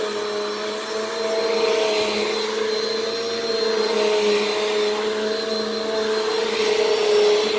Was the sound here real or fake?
real